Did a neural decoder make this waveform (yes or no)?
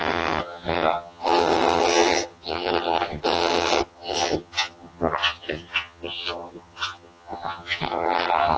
yes